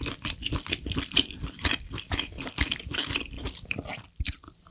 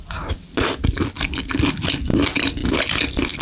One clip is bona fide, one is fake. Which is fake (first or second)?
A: first